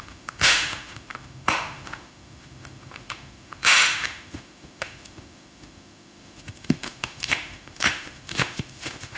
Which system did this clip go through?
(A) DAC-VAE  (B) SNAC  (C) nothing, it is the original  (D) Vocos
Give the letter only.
A